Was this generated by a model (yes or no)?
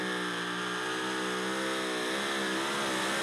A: no